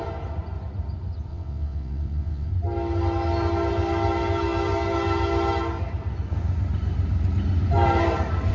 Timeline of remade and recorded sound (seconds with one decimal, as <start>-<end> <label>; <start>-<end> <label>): 0.0-1.3 recorded; 1.3-2.5 remade; 2.5-8.5 recorded

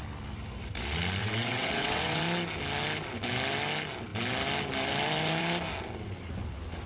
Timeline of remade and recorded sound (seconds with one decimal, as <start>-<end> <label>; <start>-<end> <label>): 0.0-1.2 recorded; 1.2-2.2 remade; 2.2-6.9 recorded

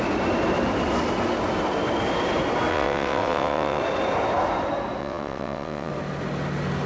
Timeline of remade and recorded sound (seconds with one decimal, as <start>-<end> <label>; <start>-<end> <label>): 0.0-2.7 recorded; 2.7-3.8 remade; 3.8-5.0 recorded; 5.0-5.9 remade; 5.9-6.9 recorded

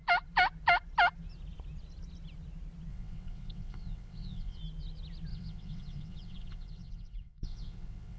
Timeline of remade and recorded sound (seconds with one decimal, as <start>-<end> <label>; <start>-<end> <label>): 0.0-2.9 recorded; 2.9-4.6 remade; 4.6-5.3 recorded; 5.3-8.2 remade